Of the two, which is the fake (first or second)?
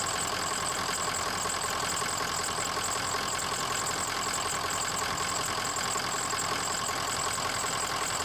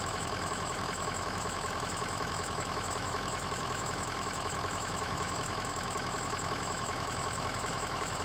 second